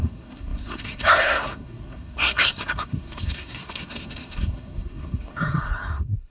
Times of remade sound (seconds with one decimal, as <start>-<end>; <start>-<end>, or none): 0.0-6.3